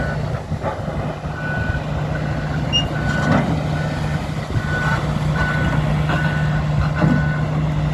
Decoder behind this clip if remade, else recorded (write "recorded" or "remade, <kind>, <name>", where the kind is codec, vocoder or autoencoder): recorded